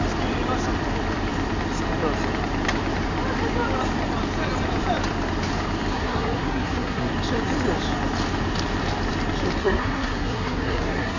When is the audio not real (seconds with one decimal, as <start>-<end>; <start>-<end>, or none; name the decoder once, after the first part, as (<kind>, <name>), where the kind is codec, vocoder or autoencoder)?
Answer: 5.9-7.1 (codec, SNAC); 9.6-11.2

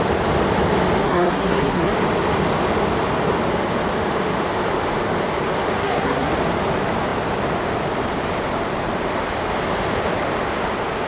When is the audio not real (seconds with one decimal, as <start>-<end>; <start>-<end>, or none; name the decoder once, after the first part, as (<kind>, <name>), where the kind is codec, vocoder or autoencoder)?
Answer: 1.0-1.9 (codec, SNAC); 5.8-6.3

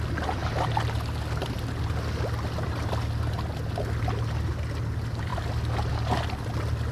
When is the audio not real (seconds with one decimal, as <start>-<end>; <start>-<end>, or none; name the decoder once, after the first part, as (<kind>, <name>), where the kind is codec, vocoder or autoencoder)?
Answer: none

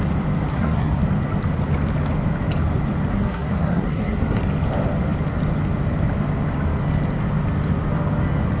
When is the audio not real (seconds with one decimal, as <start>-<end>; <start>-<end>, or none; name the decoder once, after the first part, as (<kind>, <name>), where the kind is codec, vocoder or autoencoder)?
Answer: 0.5-1.0 (codec, SNAC); 3.1-4.4

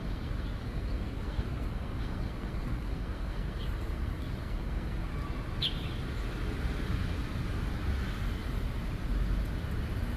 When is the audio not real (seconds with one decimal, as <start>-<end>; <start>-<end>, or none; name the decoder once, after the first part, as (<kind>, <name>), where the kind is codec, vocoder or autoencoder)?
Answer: 0.0-5.1 (codec, SNAC)

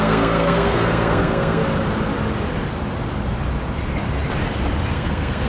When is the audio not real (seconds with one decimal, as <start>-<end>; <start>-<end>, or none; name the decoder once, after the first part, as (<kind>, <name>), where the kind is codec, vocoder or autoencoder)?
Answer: 0.0-1.6 (codec, SNAC); 4.9-5.5

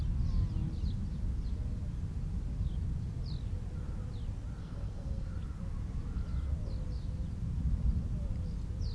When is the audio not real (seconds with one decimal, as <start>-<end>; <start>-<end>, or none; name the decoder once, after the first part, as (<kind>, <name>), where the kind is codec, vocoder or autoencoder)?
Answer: 4.6-5.3 (codec, SNAC)

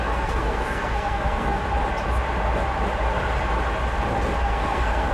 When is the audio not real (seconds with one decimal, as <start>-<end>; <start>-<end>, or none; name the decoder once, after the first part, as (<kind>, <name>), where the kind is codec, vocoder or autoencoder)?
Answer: 0.0-1.6 (codec, SNAC); 4.4-5.1